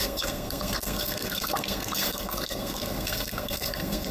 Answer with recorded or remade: remade